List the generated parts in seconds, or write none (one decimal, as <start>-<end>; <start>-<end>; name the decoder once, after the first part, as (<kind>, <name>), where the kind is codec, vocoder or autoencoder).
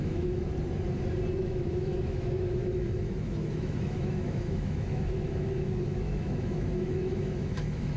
0.0-0.5 (autoencoder, DAC-VAE); 1.4-8.0